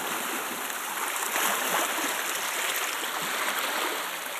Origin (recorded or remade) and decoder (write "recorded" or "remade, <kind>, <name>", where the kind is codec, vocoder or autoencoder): recorded